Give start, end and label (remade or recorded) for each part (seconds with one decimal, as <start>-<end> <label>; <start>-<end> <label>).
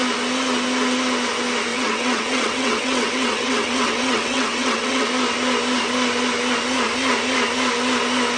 0.0-1.7 recorded; 1.7-5.1 remade; 5.1-8.4 recorded